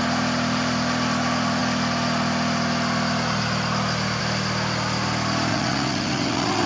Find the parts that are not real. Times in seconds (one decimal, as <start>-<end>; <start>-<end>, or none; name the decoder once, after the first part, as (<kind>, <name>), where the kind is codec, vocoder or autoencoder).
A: 5.5-6.7 (vocoder, WaveNeXt)